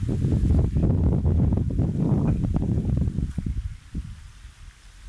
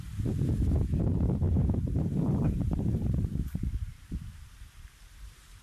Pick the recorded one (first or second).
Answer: first